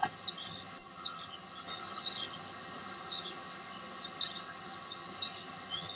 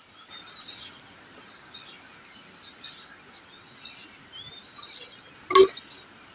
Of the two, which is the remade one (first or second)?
first